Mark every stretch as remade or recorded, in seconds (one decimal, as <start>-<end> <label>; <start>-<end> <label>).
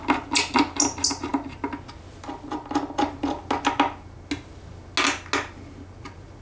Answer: 0.0-6.4 recorded